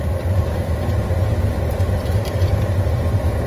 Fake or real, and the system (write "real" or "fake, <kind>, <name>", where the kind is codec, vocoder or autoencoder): real